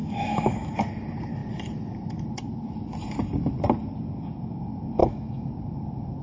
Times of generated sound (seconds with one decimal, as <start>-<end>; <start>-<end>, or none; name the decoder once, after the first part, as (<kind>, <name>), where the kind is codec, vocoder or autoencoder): 0.0-0.8 (autoencoder, DAC-VAE); 5.0-5.5